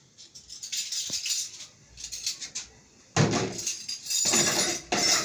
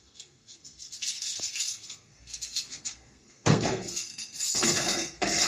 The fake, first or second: second